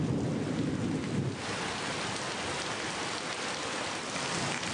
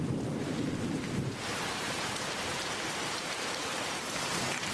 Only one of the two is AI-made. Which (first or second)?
second